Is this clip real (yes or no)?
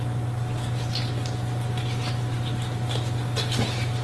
yes